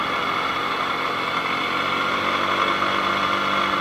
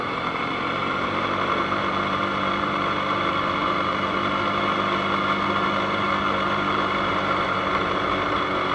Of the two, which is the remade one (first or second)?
second